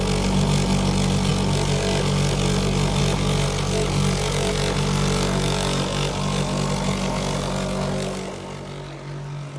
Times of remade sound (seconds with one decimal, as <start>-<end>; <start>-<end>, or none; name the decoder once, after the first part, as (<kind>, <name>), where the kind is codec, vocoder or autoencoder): none